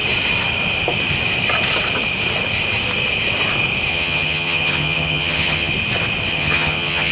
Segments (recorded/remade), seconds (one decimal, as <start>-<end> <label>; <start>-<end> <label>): 0.0-3.9 recorded; 3.9-5.7 remade; 5.7-6.3 recorded; 6.3-7.1 remade